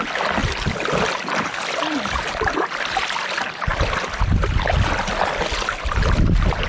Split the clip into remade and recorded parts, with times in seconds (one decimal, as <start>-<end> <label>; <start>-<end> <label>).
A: 0.0-6.7 recorded